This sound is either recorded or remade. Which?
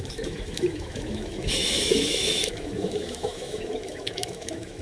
remade